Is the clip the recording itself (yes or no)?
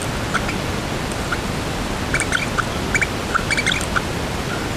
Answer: yes